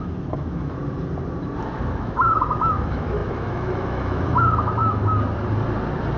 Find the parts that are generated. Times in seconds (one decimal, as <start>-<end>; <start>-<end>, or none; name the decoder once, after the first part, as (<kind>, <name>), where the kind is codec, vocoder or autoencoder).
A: 0.0-0.8 (autoencoder, DAC-VAE); 1.6-4.8